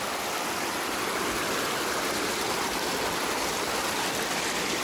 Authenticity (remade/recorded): recorded